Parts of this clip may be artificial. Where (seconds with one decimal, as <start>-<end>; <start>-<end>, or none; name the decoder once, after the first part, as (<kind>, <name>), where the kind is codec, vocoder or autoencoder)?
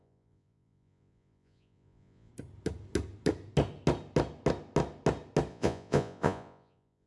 0.0-2.3 (vocoder, Vocos); 5.5-7.1